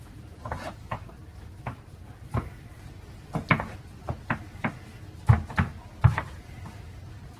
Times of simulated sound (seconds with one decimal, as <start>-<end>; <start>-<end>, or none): 0.0-1.2; 5.6-7.4